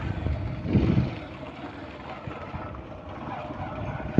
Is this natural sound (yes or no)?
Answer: no